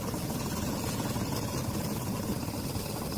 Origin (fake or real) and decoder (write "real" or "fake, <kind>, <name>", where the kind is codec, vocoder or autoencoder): real